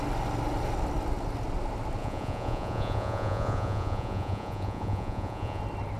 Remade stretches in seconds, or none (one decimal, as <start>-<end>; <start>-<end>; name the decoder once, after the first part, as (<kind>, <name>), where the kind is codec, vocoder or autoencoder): 2.0-5.6 (vocoder, Vocos)